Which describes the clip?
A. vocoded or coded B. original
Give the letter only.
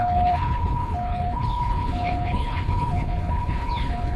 A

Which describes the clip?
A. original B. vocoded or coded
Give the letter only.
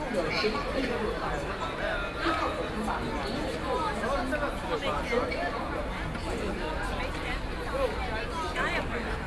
A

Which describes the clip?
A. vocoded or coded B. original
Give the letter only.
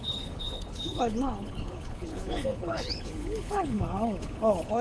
A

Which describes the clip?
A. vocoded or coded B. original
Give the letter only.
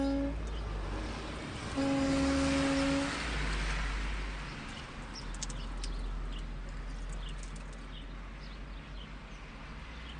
B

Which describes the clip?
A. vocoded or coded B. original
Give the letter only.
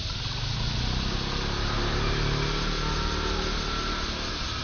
B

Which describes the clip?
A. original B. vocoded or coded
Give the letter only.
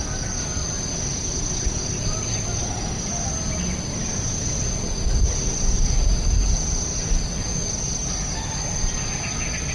A